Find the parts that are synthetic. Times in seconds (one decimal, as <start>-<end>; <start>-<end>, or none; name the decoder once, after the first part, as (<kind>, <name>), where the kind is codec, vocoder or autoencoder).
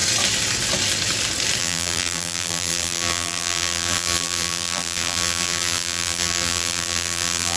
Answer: 1.6-7.6 (vocoder, BigVGAN v2)